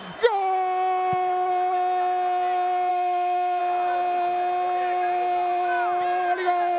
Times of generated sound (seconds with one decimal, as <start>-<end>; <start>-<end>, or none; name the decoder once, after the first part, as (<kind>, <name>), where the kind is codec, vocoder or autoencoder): 2.9-3.6 (autoencoder, DAC-VAE)